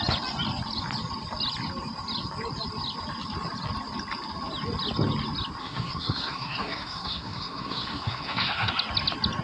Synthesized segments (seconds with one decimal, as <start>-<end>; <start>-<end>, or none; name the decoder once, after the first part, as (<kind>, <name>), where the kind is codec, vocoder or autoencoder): 5.6-8.7 (codec, SNAC)